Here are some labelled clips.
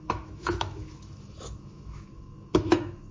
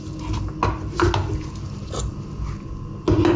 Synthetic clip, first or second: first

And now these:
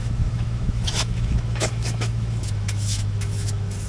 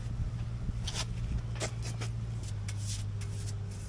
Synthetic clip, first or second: first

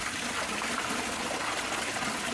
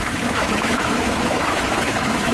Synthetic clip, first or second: second